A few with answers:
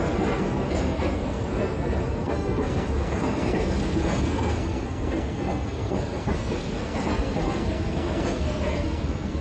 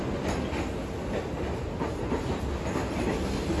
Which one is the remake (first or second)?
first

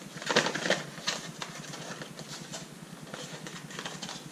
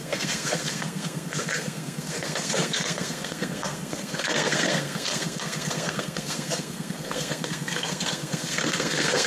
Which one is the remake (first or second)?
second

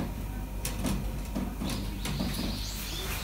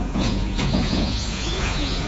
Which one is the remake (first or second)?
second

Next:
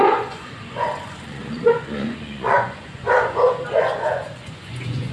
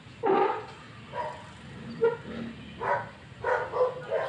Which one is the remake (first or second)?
first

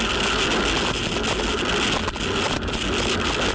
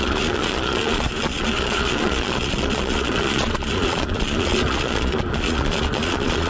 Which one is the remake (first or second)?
second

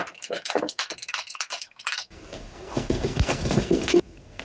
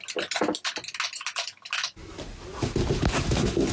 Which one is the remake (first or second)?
first